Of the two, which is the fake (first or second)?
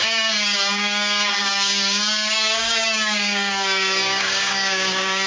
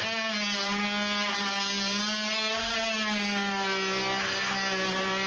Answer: first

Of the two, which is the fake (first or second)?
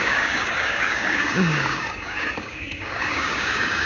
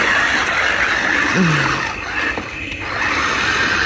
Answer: first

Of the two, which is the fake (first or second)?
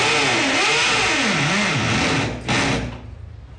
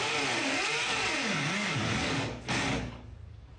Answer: second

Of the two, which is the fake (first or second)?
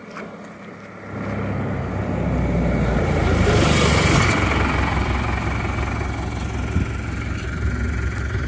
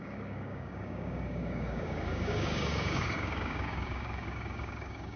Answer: second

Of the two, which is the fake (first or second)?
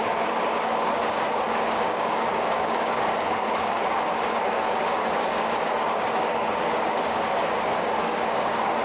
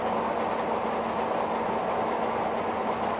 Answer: first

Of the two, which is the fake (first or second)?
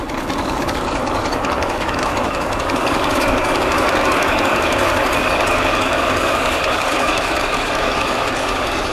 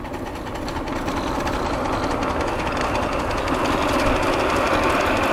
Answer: first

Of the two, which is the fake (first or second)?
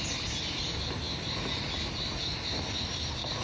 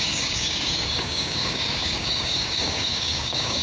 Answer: second